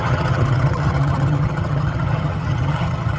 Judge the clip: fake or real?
fake